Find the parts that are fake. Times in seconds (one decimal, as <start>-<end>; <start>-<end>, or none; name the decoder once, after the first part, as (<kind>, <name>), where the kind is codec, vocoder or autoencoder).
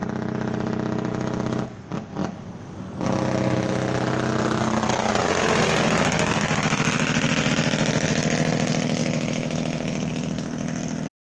9.0-10.1 (autoencoder, DAC-VAE)